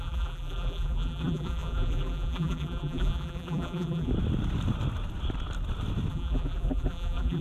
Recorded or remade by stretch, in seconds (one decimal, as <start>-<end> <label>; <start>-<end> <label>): 0.0-4.1 remade; 4.1-6.1 recorded; 6.1-7.4 remade